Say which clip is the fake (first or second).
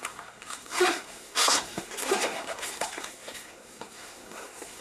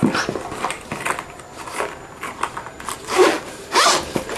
first